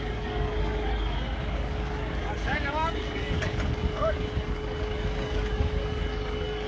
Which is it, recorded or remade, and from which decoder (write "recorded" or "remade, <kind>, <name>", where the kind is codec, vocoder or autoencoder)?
remade, codec, DAC